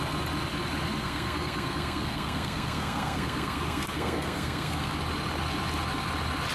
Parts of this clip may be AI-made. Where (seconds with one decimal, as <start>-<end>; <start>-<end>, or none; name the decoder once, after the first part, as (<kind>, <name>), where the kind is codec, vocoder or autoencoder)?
1.0-4.9 (codec, SNAC)